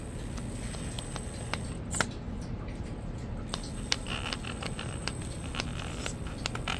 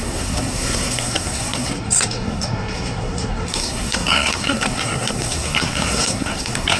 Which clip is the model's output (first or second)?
second